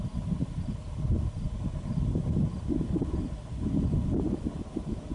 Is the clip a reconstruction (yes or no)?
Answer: no